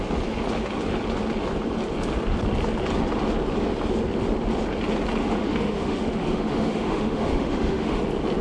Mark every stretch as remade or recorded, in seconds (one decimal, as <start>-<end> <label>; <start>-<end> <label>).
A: 0.0-5.2 recorded; 5.2-8.0 remade; 8.0-8.4 recorded